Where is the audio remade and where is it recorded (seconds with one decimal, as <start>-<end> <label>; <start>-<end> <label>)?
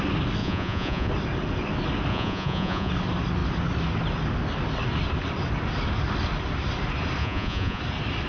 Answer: 0.0-0.4 recorded; 0.4-1.1 remade; 1.1-2.1 recorded; 2.1-2.9 remade; 2.9-7.2 recorded; 7.2-7.8 remade; 7.8-8.3 recorded